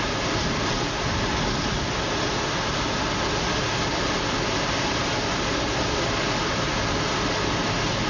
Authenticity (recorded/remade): recorded